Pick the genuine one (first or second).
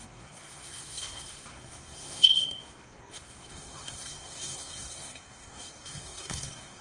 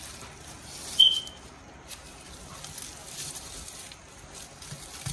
second